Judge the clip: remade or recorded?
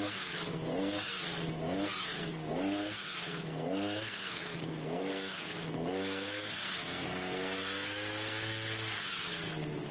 remade